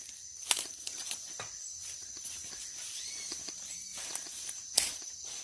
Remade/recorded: recorded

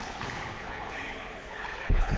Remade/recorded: remade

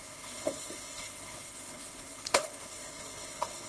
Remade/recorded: remade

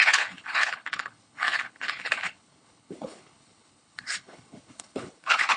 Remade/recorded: remade